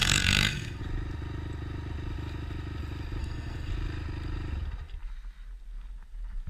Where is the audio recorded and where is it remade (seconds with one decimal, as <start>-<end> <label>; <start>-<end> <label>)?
0.0-0.8 remade; 0.8-3.2 recorded; 3.2-3.7 remade; 3.7-6.5 recorded